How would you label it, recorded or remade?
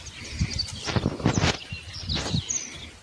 recorded